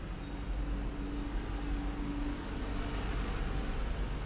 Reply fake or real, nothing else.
real